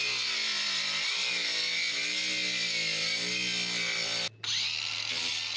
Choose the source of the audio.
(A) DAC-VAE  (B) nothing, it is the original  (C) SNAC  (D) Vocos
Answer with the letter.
B